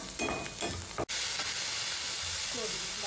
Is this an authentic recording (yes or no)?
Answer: yes